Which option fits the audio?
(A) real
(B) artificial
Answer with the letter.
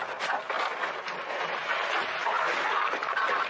A